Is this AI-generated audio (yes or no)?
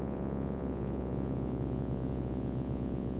yes